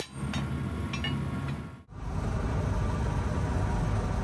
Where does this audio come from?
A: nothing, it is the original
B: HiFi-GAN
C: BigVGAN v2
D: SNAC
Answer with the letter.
A